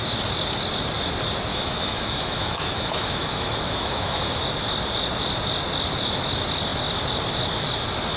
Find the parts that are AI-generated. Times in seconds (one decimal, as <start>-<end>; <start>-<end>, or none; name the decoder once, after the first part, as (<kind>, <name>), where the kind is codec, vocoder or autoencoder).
1.5-4.4 (autoencoder, DAC-VAE)